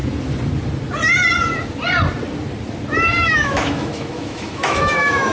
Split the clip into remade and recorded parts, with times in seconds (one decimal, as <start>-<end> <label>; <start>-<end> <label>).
0.0-3.2 recorded; 3.2-5.3 remade